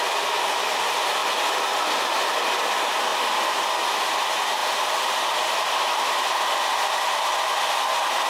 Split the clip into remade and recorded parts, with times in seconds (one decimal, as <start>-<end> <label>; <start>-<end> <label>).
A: 0.0-1.2 recorded; 1.2-1.8 remade; 1.8-4.6 recorded; 4.6-6.3 remade; 6.3-8.3 recorded